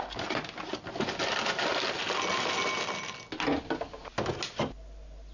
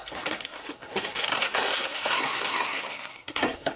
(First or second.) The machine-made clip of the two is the second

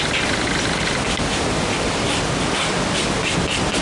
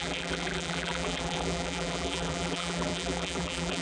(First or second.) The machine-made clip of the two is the second